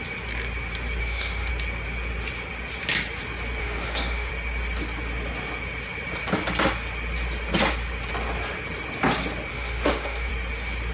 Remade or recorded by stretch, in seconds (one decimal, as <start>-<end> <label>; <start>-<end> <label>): 0.0-1.0 recorded; 1.0-1.5 remade; 1.5-3.6 recorded; 3.6-4.3 remade; 4.3-9.5 recorded; 9.5-10.3 remade; 10.3-10.9 recorded